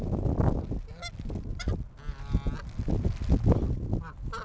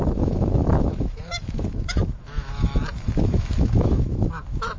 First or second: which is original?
first